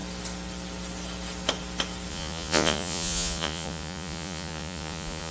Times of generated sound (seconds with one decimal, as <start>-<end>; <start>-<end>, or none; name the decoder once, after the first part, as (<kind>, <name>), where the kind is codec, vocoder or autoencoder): 2.1-5.3 (vocoder, Vocos)